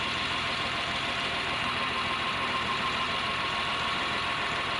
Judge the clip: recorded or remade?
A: remade